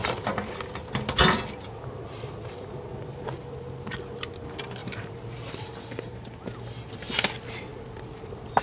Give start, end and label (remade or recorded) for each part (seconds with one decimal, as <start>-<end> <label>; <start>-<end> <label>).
0.0-0.8 remade; 0.8-4.8 recorded; 4.8-5.5 remade; 5.5-8.6 recorded